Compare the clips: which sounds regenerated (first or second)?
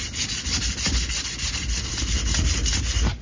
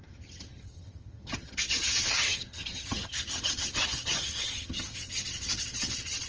second